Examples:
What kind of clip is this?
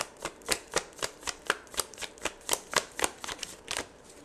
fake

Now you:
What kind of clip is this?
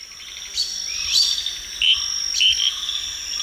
real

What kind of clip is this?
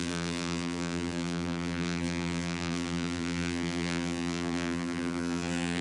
fake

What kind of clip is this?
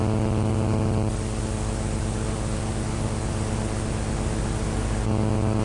real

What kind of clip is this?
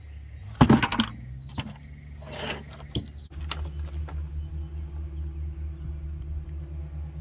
real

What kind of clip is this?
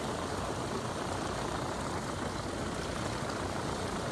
real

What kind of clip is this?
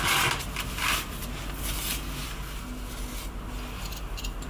real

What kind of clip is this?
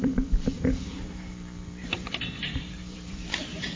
fake